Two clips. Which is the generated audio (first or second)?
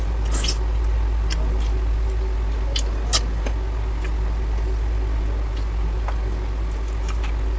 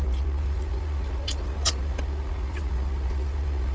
second